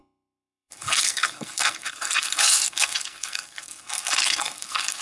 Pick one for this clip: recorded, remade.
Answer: remade